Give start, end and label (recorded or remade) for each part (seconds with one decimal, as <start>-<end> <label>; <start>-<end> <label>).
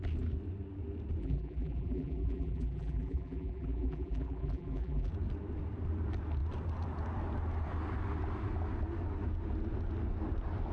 0.0-1.2 recorded; 1.2-5.1 remade; 5.1-10.7 recorded